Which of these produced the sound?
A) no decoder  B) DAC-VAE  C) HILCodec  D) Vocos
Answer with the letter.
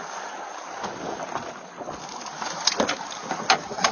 A